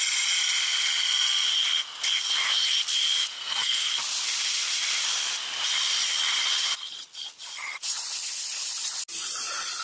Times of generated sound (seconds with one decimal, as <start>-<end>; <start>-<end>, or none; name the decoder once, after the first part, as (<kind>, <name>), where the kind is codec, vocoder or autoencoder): 3.3-3.9 (codec, SNAC)